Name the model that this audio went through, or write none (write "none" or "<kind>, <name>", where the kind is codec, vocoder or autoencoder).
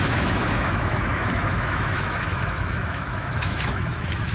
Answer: autoencoder, DAC-VAE